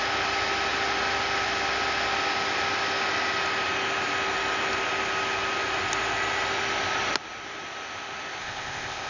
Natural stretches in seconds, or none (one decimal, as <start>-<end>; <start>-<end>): 0.0-8.4

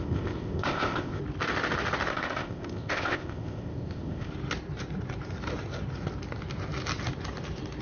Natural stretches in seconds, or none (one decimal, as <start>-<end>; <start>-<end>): 1.2-2.1; 4.3-7.8